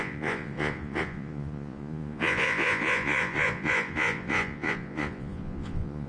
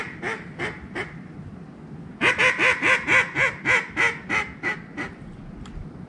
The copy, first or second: first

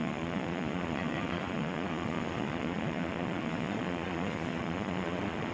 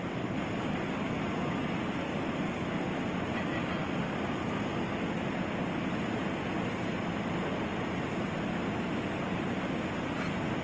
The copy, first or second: first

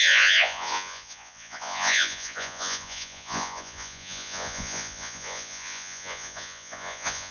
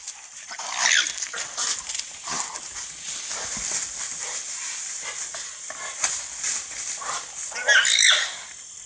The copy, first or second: first